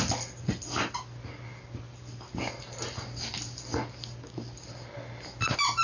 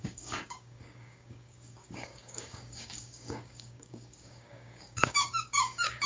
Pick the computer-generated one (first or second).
second